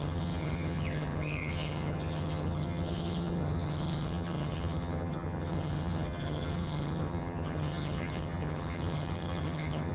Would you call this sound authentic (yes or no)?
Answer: no